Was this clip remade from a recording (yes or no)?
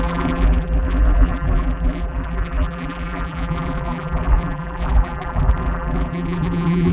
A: yes